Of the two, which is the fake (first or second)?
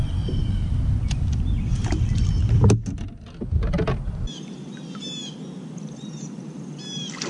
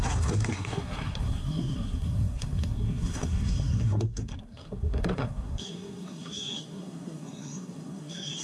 second